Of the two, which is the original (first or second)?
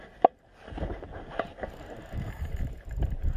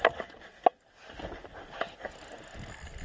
second